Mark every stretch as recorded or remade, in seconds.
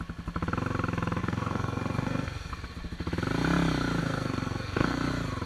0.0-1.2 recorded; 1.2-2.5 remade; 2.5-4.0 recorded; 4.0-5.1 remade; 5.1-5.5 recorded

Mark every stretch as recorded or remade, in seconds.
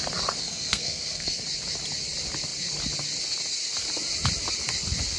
0.0-0.4 recorded; 0.4-1.4 remade; 1.4-5.2 recorded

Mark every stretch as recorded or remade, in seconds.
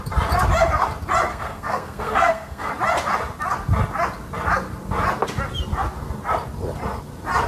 0.0-1.3 recorded; 1.3-2.7 remade; 2.7-7.5 recorded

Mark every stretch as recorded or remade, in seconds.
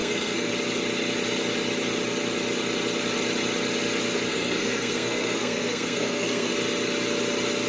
0.0-0.5 remade; 0.5-4.3 recorded; 4.3-6.5 remade; 6.5-7.7 recorded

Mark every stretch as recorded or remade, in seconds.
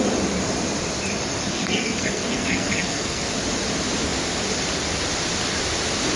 0.0-1.5 recorded; 1.5-3.4 remade; 3.4-6.2 recorded